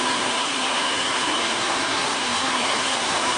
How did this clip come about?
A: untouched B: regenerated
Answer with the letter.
B